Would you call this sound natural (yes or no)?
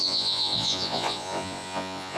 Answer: no